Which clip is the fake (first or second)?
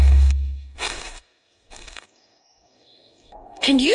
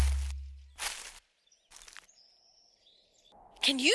first